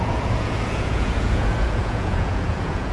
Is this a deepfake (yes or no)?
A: yes